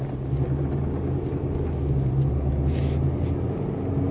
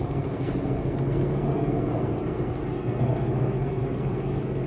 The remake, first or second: second